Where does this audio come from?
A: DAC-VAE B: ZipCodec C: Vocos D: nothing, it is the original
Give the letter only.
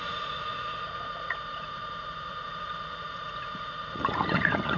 C